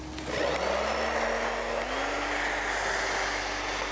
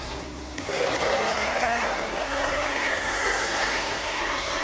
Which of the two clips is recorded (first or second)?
first